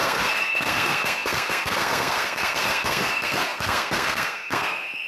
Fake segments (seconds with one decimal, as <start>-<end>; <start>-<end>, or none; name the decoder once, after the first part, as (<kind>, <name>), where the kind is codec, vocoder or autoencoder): 0.0-5.1 (codec, SNAC)